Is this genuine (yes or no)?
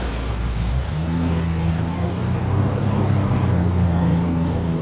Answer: no